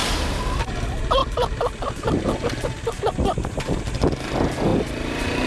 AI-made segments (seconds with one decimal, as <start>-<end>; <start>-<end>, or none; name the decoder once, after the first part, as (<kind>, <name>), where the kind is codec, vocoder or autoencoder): 0.0-0.6 (vocoder, BigVGAN v2); 4.7-5.5